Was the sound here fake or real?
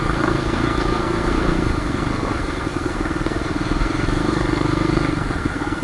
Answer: fake